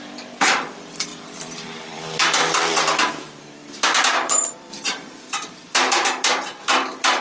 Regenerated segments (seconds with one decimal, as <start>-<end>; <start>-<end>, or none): 1.1-3.1; 3.6-7.2